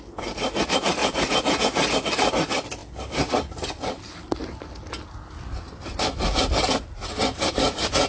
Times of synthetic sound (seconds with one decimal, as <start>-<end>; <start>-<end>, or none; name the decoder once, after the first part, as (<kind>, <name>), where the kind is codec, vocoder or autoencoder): 1.0-1.9 (vocoder, Vocos)